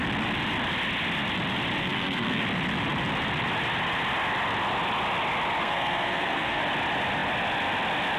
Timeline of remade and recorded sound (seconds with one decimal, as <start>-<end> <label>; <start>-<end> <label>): 0.0-1.8 recorded; 1.8-2.4 remade; 2.4-5.6 recorded; 5.6-6.6 remade; 6.6-8.2 recorded